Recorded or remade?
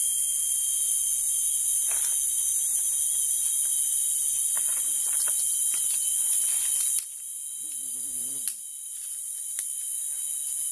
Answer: recorded